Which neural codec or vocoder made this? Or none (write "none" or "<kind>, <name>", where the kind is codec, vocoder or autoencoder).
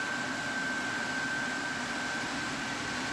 none